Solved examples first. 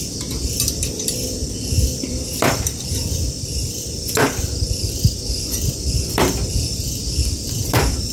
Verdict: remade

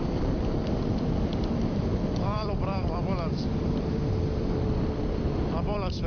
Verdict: remade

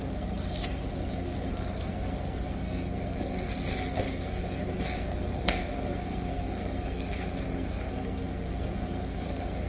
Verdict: remade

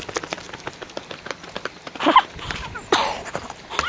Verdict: recorded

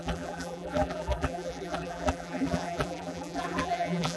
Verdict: remade